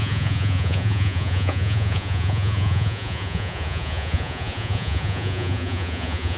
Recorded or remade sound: remade